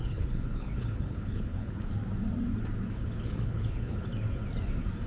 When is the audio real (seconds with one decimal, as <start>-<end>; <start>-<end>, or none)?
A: 1.9-2.9; 4.1-5.1